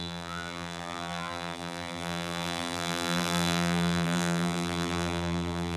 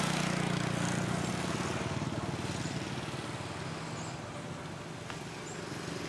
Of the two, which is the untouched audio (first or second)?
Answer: second